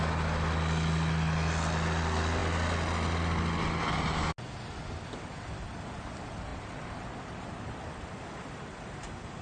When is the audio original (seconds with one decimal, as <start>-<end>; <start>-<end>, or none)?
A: 0.0-6.5; 8.0-9.4